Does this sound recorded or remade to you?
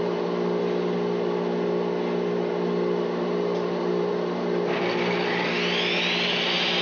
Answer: recorded